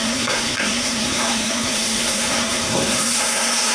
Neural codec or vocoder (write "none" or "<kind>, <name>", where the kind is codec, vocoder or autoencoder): codec, SNAC